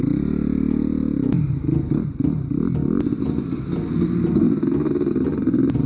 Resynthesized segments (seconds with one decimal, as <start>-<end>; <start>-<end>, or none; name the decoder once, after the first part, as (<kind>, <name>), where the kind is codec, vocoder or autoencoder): none